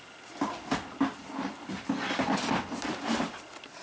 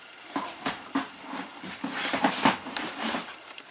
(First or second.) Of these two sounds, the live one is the first